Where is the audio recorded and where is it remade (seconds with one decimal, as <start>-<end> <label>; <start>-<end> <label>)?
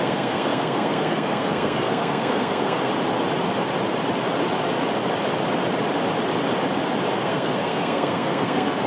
0.0-2.9 remade; 2.9-7.2 recorded; 7.2-8.9 remade